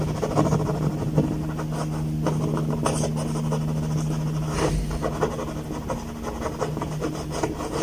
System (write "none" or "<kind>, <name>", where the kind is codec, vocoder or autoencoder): none